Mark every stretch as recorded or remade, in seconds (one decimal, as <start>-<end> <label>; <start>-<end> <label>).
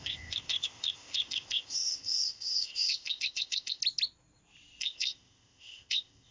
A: 0.0-3.8 remade; 3.8-4.8 recorded; 4.8-6.3 remade